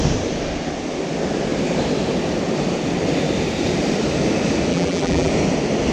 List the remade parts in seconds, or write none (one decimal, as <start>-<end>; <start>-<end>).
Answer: 4.7-5.3

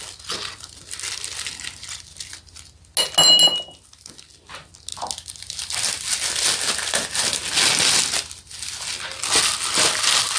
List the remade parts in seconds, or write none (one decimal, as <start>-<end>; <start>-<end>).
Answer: none

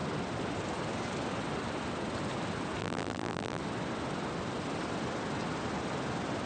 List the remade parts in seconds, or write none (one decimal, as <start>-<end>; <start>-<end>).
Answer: 2.8-3.6